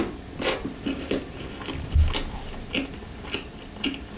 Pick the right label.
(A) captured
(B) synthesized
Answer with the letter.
A